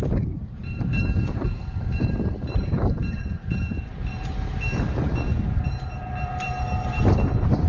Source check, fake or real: fake